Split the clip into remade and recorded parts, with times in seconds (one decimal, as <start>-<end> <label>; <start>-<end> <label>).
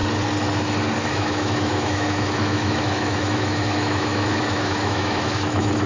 0.0-1.1 recorded; 1.1-5.9 remade